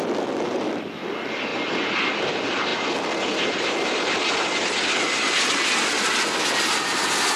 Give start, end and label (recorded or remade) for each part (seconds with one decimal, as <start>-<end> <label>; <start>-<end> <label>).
0.0-7.4 recorded